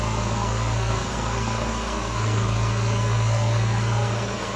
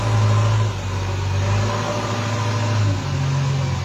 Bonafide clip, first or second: second